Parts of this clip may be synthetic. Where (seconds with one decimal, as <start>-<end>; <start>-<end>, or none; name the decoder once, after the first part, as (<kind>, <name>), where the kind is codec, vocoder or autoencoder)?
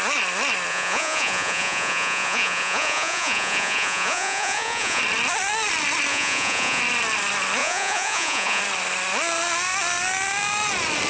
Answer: 0.7-5.0 (vocoder, Vocos); 6.1-6.8; 7.6-8.6